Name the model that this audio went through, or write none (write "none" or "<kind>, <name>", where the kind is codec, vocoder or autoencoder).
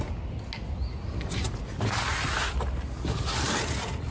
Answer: none